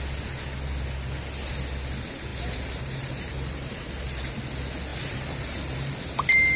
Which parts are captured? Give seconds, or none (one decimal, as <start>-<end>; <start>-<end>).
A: 0.0-2.3; 4.3-4.9; 5.9-6.6